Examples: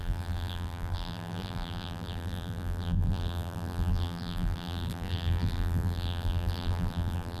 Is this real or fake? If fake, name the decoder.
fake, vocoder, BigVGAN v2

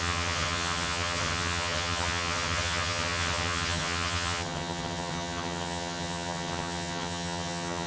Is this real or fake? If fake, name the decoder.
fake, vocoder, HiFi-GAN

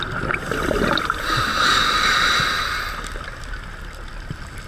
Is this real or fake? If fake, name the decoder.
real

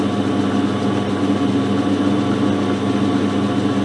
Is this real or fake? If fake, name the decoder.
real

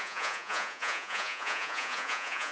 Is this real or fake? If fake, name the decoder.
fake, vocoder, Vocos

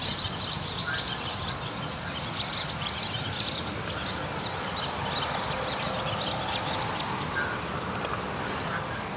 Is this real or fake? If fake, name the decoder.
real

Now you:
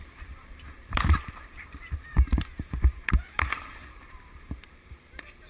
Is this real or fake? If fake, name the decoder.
fake, vocoder, BigVGAN v2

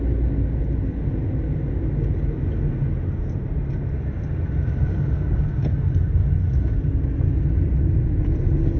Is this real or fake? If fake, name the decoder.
real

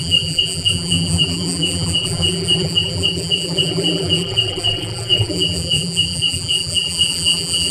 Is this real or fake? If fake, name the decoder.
fake, vocoder, BigVGAN v2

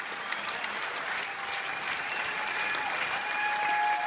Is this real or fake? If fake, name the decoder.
real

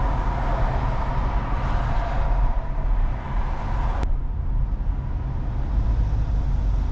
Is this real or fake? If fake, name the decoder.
real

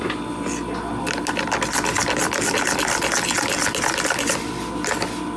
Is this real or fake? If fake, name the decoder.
real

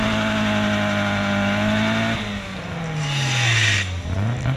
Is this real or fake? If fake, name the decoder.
real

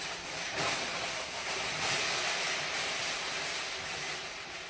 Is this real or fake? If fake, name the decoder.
real